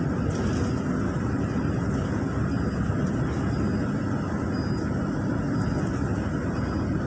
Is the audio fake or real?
real